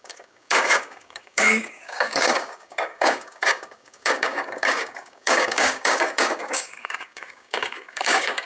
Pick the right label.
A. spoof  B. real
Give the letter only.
A